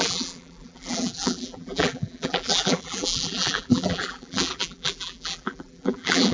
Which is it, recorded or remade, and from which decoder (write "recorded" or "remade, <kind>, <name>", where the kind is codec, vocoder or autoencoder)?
remade, vocoder, BigVGAN v2